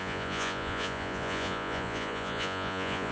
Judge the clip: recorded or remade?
remade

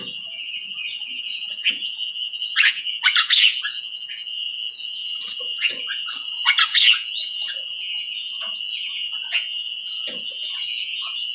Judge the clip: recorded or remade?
remade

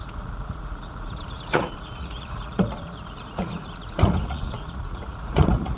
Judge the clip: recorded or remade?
remade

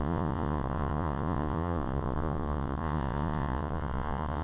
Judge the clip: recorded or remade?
remade